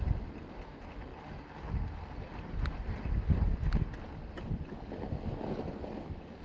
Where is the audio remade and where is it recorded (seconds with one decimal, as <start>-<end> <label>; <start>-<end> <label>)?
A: 0.0-6.4 recorded